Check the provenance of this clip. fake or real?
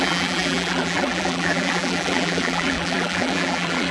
fake